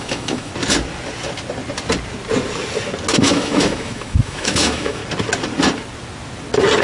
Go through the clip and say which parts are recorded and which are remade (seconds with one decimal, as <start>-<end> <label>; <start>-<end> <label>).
0.0-0.5 remade; 0.5-3.2 recorded; 3.2-5.0 remade; 5.0-6.8 recorded